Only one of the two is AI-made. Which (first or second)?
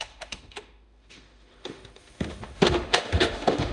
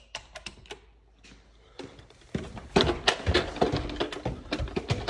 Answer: first